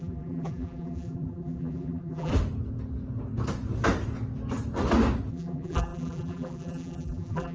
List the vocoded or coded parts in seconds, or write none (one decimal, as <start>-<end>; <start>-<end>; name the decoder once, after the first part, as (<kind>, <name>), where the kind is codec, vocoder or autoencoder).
0.0-2.3 (vocoder, BigVGAN v2); 5.3-7.5